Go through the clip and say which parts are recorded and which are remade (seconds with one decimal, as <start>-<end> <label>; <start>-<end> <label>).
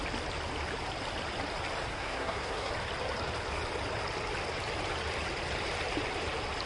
0.0-1.9 recorded; 1.9-2.7 remade; 2.7-6.7 recorded